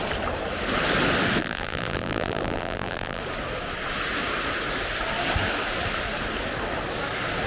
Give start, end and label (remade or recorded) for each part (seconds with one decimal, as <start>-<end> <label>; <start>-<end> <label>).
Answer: 0.0-1.4 recorded; 1.4-3.2 remade; 3.2-7.5 recorded